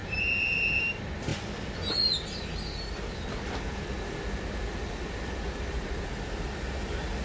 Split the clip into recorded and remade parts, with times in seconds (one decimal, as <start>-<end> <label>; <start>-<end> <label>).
0.0-0.9 remade; 0.9-7.2 recorded